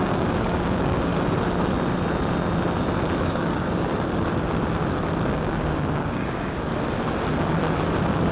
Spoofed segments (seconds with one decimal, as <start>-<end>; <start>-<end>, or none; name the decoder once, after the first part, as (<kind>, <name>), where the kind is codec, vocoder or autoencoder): 0.0-1.1 (codec, DAC); 3.2-3.9; 5.3-6.7